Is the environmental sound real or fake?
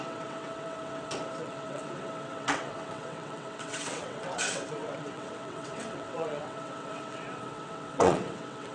fake